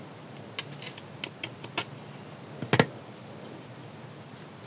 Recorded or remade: recorded